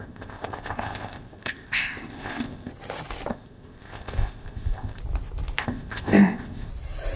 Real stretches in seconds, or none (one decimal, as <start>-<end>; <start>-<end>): 2.7-3.3; 5.0-5.6; 6.7-7.2